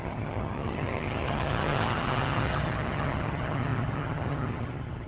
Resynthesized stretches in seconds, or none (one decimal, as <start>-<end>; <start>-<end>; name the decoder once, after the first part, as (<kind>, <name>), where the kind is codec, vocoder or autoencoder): 0.0-5.1 (vocoder, HiFi-GAN)